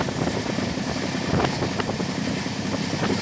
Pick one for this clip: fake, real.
real